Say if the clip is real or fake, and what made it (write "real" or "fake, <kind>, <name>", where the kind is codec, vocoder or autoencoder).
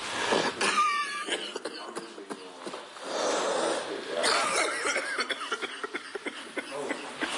real